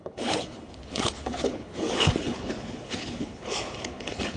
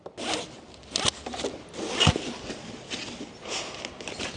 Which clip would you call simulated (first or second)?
first